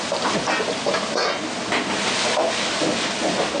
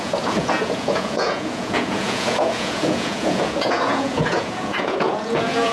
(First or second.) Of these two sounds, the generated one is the second